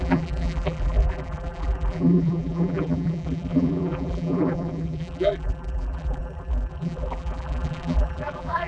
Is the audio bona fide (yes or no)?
no